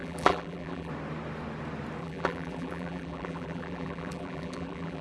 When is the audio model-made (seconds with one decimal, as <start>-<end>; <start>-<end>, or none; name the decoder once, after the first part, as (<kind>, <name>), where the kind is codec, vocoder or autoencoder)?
0.0-0.9 (vocoder, BigVGAN v2); 2.0-5.0